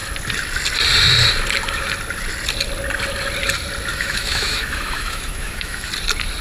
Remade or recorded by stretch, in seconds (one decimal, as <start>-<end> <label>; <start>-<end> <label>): 0.0-3.9 recorded; 3.9-5.9 remade; 5.9-6.4 recorded